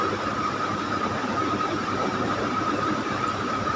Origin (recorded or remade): remade